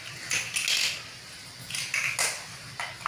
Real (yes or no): yes